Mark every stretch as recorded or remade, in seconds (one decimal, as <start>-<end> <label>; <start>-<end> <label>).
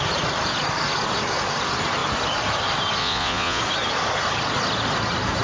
0.0-3.0 recorded; 3.0-3.6 remade; 3.6-5.4 recorded